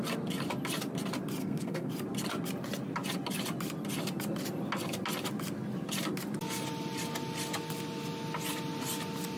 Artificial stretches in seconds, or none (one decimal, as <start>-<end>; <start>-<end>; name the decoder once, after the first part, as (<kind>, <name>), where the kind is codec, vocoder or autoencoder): 1.4-1.9 (codec, SNAC)